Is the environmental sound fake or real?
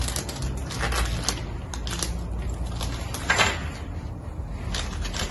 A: real